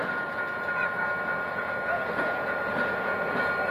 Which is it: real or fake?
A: fake